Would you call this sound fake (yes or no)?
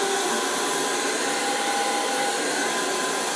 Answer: no